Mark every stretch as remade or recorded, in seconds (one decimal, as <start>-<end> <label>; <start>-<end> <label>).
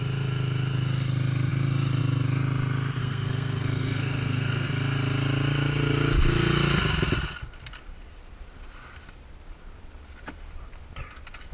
0.0-3.0 recorded; 3.0-4.7 remade; 4.7-11.5 recorded